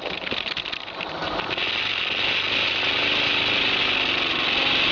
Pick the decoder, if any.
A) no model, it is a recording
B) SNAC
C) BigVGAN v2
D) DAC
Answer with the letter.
A